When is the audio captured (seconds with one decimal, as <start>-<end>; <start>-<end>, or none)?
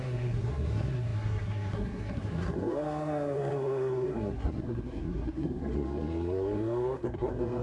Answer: none